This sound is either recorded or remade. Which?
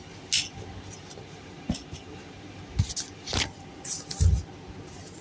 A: recorded